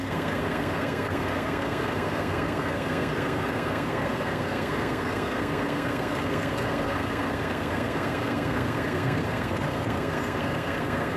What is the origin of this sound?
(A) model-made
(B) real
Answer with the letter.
A